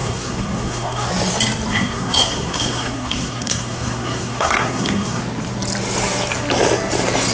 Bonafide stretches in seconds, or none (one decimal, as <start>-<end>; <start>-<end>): 1.1-1.7; 5.2-7.3